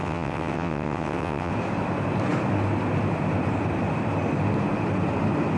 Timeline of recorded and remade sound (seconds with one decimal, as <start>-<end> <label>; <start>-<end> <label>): 0.0-1.5 remade; 1.5-5.6 recorded